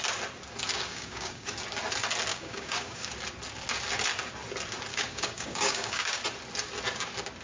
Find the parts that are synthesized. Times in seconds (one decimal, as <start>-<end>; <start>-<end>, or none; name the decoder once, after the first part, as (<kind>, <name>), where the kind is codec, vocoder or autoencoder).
0.7-1.5 (codec, DAC); 2.3-3.1; 4.9-6.2